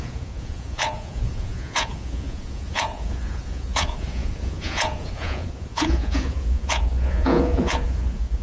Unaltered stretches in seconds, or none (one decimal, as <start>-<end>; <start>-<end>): none